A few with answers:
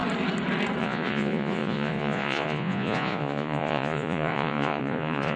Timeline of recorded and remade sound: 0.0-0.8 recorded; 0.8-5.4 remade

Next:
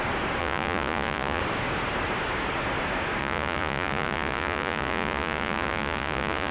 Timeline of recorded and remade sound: 0.0-0.4 recorded; 0.4-1.4 remade; 1.4-3.2 recorded; 3.2-6.5 remade